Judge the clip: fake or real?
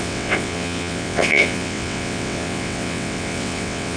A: fake